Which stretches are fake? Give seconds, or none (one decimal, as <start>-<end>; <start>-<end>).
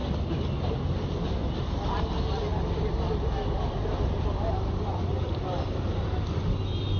2.5-6.4